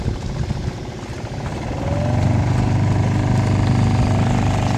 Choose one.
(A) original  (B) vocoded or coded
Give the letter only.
A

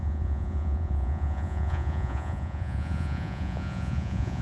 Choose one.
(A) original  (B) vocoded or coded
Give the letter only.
B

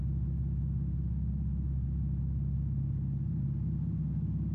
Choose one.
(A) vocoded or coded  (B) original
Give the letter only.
B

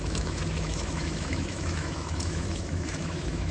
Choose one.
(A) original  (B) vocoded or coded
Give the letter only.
B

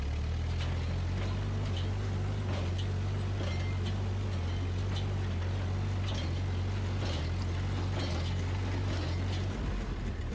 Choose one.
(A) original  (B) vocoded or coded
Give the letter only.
A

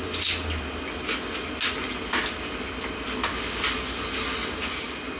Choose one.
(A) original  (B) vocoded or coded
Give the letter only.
A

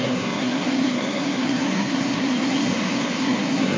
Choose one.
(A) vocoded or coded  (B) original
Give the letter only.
A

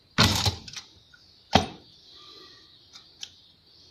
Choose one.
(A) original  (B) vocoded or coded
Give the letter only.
A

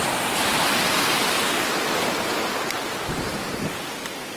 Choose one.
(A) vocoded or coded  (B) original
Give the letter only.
B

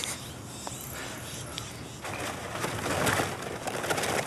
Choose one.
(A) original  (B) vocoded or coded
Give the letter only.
A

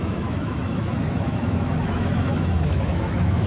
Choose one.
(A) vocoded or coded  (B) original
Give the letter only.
A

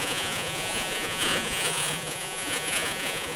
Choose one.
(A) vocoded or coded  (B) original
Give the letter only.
A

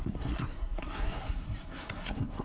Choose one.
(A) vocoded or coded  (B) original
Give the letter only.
A